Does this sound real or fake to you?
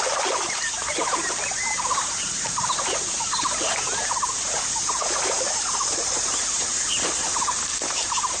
fake